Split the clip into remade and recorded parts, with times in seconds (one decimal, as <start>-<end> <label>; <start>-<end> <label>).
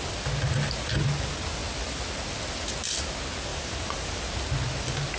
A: 0.0-3.5 recorded; 3.5-4.3 remade; 4.3-5.2 recorded